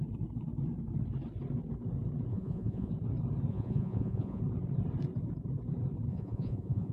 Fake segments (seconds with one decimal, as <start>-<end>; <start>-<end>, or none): 2.3-2.9; 3.5-4.4; 6.1-6.9